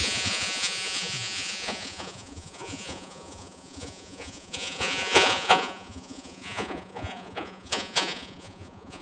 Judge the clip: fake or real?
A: fake